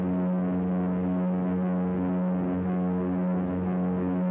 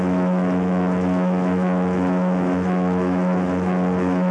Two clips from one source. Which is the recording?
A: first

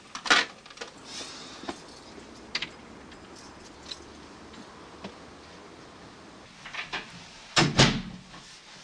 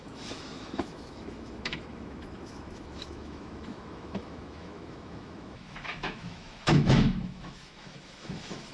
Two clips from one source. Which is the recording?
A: first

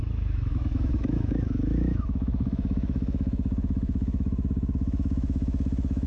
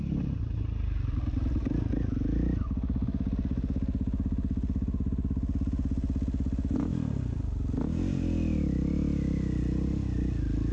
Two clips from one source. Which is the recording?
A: second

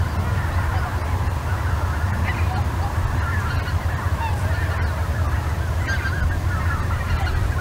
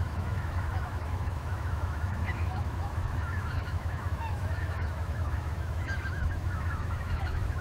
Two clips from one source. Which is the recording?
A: first